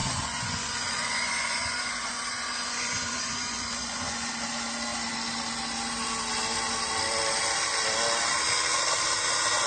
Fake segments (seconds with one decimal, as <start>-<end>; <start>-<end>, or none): 0.0-4.3

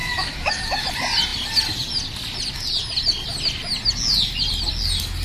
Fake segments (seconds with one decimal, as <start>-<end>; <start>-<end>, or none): 0.0-0.9